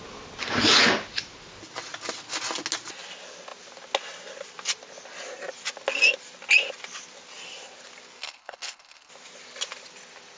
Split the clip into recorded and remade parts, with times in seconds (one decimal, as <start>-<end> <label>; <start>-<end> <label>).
0.0-8.2 recorded; 8.2-9.1 remade; 9.1-10.4 recorded